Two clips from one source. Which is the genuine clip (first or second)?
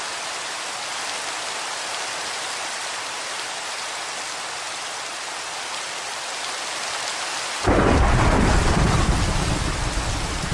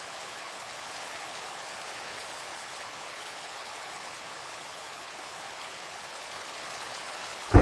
first